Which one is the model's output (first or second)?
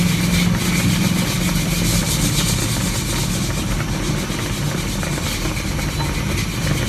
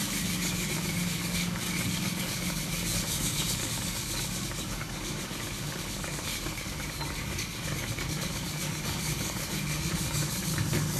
second